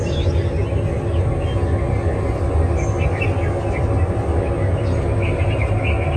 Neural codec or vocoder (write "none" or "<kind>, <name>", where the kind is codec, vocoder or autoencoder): none